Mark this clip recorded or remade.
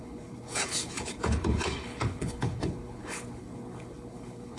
remade